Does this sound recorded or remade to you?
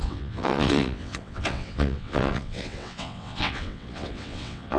remade